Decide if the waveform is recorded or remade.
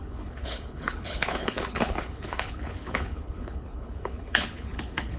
remade